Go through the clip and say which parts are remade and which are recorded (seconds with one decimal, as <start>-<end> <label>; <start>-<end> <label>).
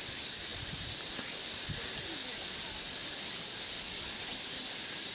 0.0-5.1 recorded